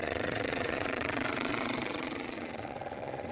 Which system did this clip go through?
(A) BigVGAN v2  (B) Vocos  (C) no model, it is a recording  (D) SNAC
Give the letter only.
B